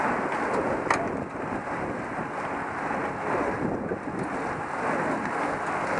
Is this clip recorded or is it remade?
recorded